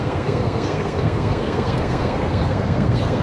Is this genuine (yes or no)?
no